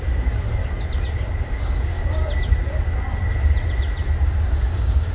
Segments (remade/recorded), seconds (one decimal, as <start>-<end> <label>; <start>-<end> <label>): 0.0-0.6 remade; 0.6-1.4 recorded; 1.4-2.2 remade; 2.2-4.4 recorded; 4.4-5.1 remade